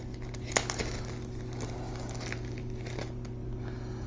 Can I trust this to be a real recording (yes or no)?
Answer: yes